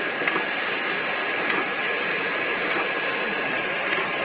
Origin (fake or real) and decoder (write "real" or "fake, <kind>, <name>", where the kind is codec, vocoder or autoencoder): real